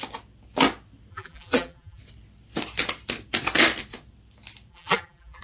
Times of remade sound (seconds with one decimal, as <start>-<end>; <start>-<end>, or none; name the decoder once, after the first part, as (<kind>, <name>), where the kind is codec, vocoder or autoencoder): 1.1-2.0 (vocoder, BigVGAN v2); 4.7-5.4